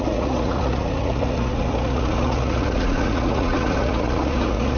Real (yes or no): no